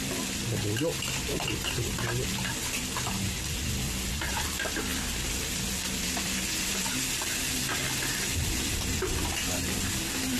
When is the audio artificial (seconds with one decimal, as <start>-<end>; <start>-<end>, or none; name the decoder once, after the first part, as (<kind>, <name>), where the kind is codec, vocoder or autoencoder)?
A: none

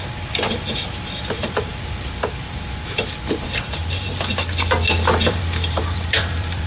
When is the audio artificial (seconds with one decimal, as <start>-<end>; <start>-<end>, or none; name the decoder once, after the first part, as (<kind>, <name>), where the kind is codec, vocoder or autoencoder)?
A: 0.0-3.8 (vocoder, BigVGAN v2); 5.3-6.7

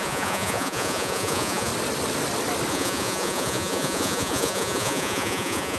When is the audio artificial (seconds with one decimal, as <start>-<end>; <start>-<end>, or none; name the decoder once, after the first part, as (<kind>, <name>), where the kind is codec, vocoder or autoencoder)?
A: 0.0-1.7 (vocoder, Vocos); 2.7-5.8

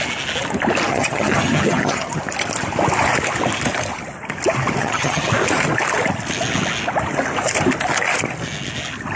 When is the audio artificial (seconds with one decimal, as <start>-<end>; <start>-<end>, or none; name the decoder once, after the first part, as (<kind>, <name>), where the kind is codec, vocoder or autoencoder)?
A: 0.9-2.2 (vocoder, HiFi-GAN); 4.8-5.3

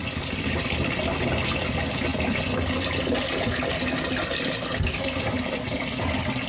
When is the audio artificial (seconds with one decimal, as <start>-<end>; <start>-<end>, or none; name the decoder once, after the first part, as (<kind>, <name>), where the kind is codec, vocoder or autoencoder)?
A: none